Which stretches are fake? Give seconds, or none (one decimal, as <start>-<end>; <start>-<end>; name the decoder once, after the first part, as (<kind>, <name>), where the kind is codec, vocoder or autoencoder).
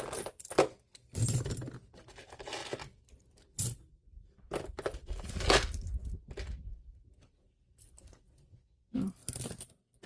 none